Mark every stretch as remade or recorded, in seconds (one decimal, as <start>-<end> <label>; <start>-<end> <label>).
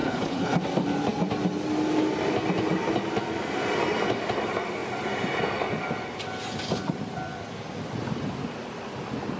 0.0-0.6 remade; 0.6-9.4 recorded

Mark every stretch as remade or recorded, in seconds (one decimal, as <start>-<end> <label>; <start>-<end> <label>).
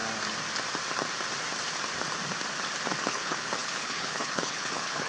0.0-3.1 recorded; 3.1-5.1 remade